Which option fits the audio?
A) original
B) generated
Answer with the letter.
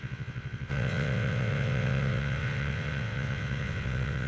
B